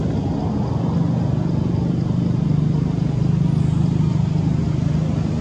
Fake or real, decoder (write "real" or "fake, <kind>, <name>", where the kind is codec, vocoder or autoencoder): real